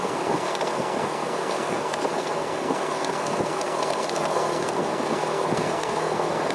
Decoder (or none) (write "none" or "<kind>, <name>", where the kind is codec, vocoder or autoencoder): codec, SNAC